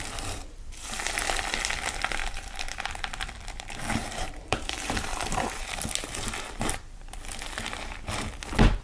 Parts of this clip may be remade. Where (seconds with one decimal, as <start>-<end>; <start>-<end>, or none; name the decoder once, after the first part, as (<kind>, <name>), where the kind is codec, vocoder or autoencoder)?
2.2-2.8 (vocoder, BigVGAN v2); 4.0-5.9